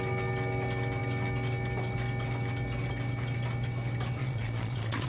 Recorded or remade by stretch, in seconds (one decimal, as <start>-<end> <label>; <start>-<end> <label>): 0.0-4.2 recorded; 4.2-5.1 remade